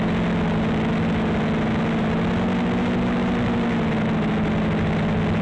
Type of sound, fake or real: real